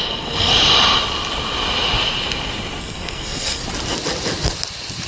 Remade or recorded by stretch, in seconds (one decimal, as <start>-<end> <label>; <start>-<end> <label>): 0.0-0.5 remade; 0.5-2.8 recorded; 2.8-3.6 remade; 3.6-5.1 recorded